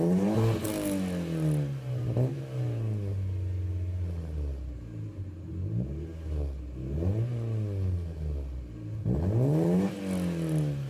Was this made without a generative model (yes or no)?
yes